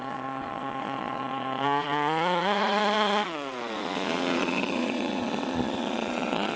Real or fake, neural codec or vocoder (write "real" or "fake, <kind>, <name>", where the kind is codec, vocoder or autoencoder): fake, vocoder, Vocos